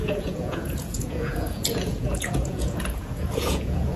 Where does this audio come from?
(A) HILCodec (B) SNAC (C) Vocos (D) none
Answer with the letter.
C